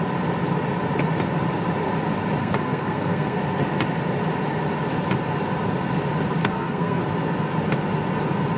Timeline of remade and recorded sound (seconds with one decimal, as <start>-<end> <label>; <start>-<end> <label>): 0.0-2.4 recorded; 2.4-3.4 remade; 3.4-6.4 recorded; 6.4-7.0 remade; 7.0-8.6 recorded